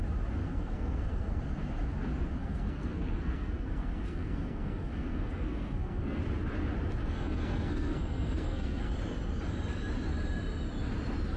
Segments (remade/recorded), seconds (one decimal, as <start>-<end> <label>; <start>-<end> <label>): 0.0-0.4 recorded; 0.4-1.4 remade; 1.4-2.4 recorded; 2.4-6.2 remade; 6.2-7.0 recorded; 7.0-8.9 remade; 8.9-11.4 recorded